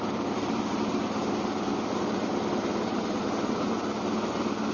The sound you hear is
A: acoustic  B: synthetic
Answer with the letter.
A